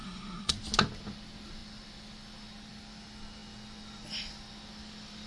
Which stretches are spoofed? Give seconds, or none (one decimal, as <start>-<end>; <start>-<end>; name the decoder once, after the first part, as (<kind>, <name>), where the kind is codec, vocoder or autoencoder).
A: 0.0-0.5 (codec, SNAC)